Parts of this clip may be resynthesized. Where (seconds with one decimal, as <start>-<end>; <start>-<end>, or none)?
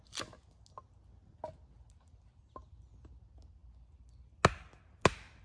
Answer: none